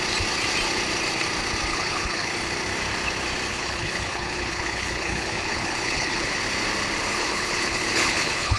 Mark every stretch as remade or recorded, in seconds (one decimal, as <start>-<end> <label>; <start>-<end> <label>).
0.0-1.7 recorded; 1.7-2.3 remade; 2.3-3.5 recorded; 3.5-6.4 remade; 6.4-7.1 recorded; 7.1-8.6 remade